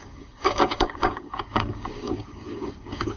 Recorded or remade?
remade